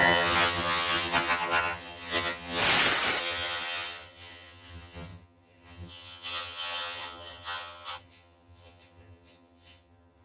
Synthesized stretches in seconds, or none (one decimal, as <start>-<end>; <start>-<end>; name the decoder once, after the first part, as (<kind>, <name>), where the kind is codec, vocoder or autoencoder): 0.0-2.6 (vocoder, HiFi-GAN); 3.2-10.2